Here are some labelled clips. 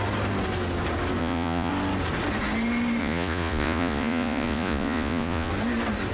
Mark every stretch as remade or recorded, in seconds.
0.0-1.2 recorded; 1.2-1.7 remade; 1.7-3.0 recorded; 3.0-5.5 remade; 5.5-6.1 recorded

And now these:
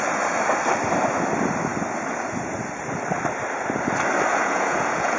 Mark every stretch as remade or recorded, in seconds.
0.0-4.3 recorded; 4.3-5.2 remade

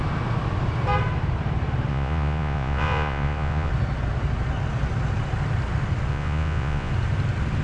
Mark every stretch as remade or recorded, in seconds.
0.0-1.9 recorded; 1.9-3.7 remade; 3.7-6.1 recorded; 6.1-6.9 remade; 6.9-7.6 recorded

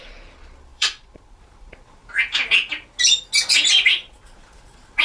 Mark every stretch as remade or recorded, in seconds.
0.0-2.0 remade; 2.0-3.9 recorded; 3.9-5.0 remade

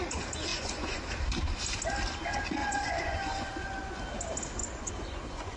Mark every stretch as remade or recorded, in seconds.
0.0-0.5 recorded; 0.5-1.0 remade; 1.0-2.6 recorded; 2.6-4.0 remade; 4.0-4.6 recorded; 4.6-5.6 remade

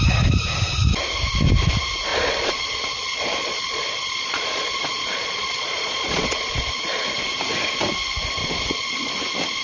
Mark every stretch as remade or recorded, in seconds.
0.0-2.1 recorded; 2.1-7.0 remade; 7.0-8.4 recorded; 8.4-9.1 remade; 9.1-9.6 recorded

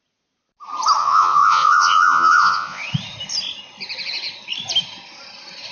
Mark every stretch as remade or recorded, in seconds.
0.0-1.0 recorded; 1.0-2.8 remade; 2.8-5.7 recorded